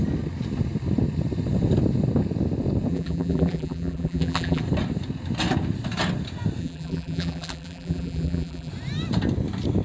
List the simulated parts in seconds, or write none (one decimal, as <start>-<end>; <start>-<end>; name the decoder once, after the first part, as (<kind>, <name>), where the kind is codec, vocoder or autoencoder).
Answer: 2.9-4.6 (vocoder, BigVGAN v2); 6.6-8.7